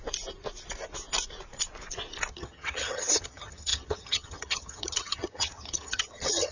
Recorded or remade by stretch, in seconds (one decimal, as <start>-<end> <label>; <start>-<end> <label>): 0.0-2.3 recorded; 2.3-6.5 remade